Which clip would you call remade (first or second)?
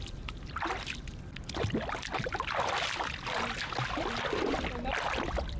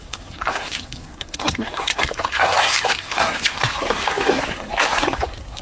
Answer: second